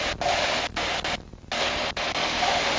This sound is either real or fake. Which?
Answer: real